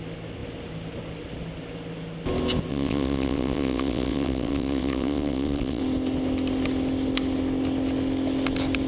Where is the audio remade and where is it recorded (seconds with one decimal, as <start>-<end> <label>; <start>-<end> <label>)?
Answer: 0.0-2.7 recorded; 2.7-5.8 remade; 5.8-8.9 recorded